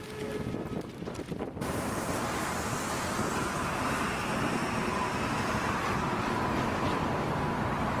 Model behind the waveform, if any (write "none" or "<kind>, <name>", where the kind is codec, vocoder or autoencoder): none